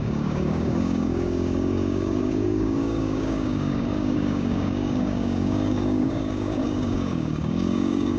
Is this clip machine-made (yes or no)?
yes